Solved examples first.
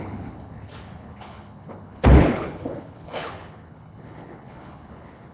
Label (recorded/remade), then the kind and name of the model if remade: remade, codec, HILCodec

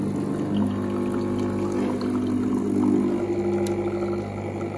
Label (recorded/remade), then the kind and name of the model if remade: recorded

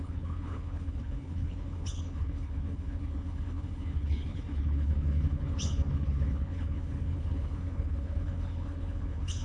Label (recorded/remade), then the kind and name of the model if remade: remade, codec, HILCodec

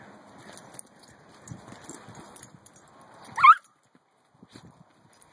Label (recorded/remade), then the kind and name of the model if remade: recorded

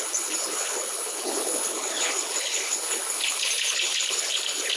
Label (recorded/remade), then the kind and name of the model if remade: remade, codec, HILCodec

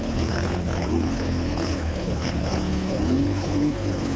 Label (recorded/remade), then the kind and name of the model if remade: remade, codec, HILCodec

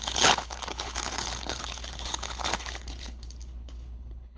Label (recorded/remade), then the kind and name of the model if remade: remade, codec, HILCodec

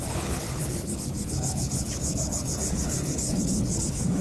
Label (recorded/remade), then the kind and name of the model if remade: remade, codec, HILCodec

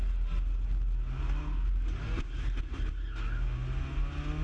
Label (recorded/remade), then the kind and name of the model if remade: recorded